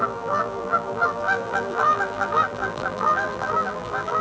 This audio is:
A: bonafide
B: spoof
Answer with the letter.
B